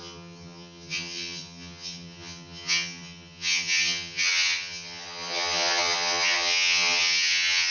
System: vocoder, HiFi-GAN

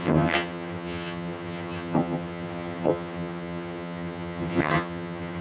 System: vocoder, HiFi-GAN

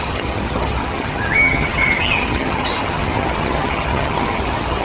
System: vocoder, HiFi-GAN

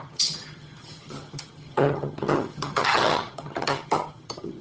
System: vocoder, HiFi-GAN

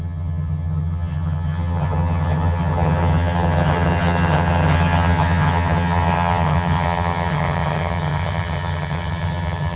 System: vocoder, HiFi-GAN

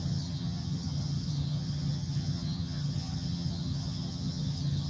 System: vocoder, HiFi-GAN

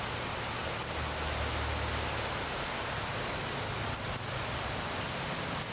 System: none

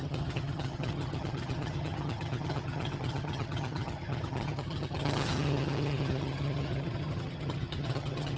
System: vocoder, HiFi-GAN